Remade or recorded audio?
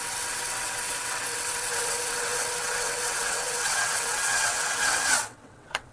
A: remade